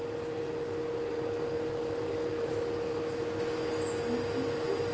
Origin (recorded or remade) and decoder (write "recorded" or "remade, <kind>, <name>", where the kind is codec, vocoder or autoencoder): recorded